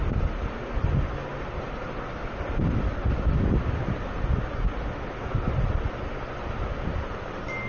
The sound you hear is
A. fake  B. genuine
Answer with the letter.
B